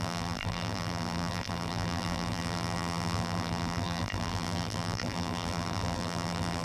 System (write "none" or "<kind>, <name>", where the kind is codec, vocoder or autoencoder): vocoder, BigVGAN v2